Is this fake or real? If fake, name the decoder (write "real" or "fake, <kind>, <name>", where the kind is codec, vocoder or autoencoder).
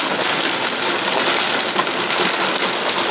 real